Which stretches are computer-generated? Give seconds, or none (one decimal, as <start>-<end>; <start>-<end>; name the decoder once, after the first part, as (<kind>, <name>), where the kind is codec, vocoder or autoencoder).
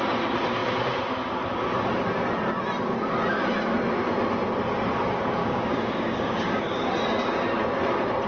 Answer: 5.4-6.9 (codec, DAC)